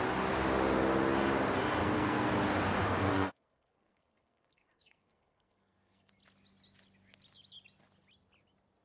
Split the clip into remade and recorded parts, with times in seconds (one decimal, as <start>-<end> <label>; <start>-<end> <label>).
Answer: 0.0-1.8 recorded; 1.8-2.3 remade; 2.3-2.8 recorded; 2.8-6.1 remade; 6.1-8.8 recorded